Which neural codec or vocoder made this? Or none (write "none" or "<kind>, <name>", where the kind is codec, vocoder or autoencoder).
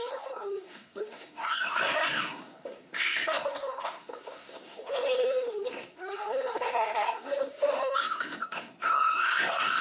codec, SNAC